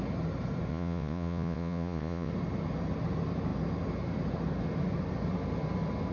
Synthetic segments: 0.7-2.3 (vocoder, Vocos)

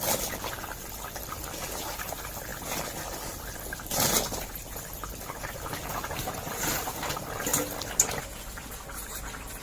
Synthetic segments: none

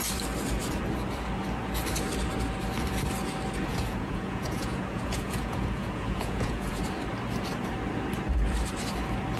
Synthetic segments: 3.7-6.8 (vocoder, Vocos)

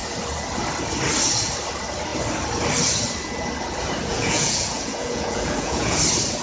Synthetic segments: 4.1-6.0 (vocoder, Vocos)

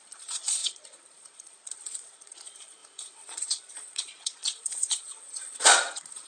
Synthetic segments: 0.0-6.3 (vocoder, Vocos)

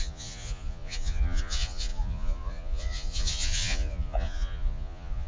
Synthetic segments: 0.0-5.3 (vocoder, Vocos)